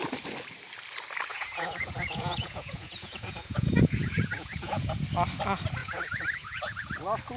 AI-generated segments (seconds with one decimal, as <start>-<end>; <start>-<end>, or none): 1.3-4.9; 5.8-6.9

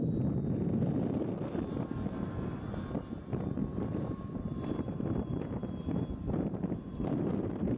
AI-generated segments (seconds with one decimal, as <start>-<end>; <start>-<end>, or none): 3.6-7.8

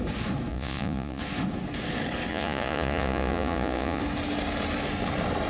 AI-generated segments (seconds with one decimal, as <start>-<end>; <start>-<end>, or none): 0.5-1.2; 2.3-4.0

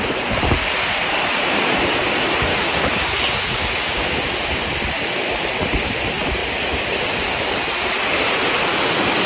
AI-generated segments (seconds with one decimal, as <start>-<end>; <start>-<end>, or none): 2.5-4.2